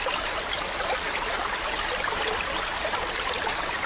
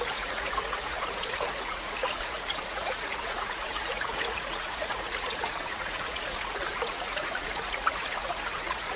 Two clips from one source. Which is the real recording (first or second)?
first